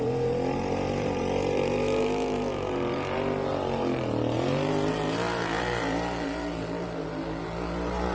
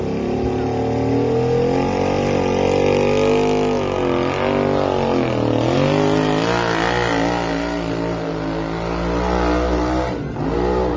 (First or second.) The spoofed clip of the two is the first